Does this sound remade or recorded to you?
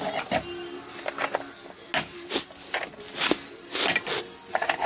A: recorded